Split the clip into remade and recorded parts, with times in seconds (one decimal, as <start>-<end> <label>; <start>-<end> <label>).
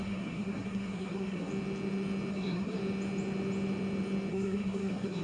0.0-1.5 remade; 1.5-2.3 recorded; 2.3-2.8 remade; 2.8-4.3 recorded; 4.3-5.2 remade